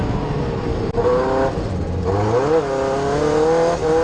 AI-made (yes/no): no